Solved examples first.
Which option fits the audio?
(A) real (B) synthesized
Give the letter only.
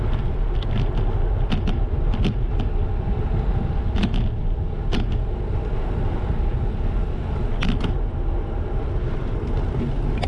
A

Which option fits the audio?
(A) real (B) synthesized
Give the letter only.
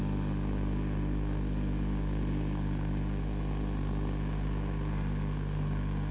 B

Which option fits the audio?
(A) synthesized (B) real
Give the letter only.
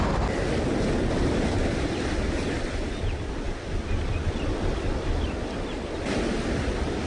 B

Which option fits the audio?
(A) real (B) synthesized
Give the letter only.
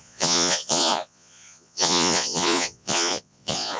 B